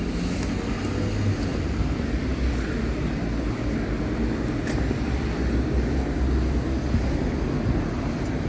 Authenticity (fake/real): real